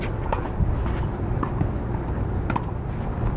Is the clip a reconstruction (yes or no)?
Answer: no